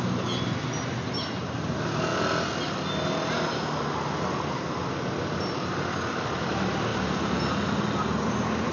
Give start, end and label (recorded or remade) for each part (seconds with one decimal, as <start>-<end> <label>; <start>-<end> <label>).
0.0-8.7 recorded